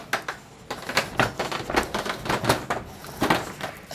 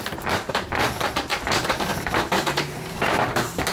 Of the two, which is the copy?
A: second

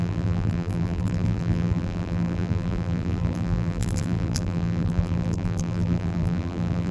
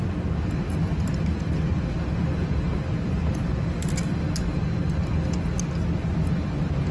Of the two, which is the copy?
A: first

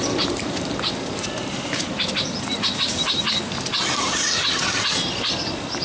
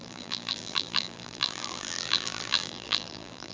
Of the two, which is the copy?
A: second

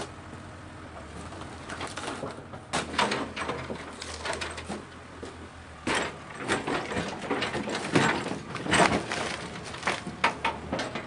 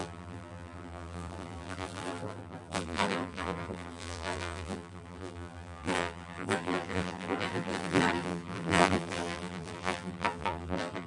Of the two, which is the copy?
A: second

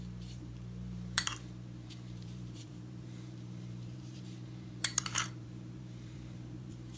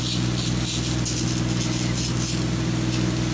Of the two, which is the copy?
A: first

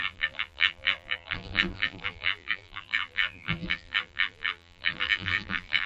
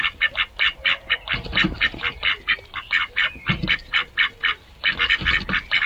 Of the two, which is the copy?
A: first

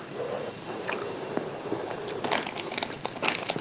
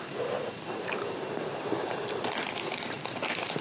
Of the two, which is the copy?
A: second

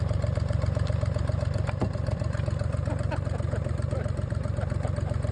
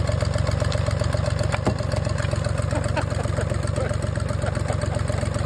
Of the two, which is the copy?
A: first